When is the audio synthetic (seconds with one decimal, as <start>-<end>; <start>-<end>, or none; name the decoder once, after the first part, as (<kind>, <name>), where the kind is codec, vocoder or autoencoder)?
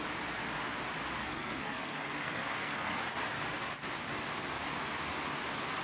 1.2-3.0 (codec, SNAC)